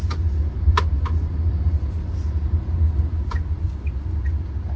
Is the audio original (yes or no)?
yes